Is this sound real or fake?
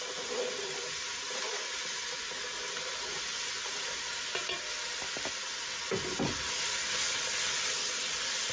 real